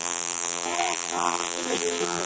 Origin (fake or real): fake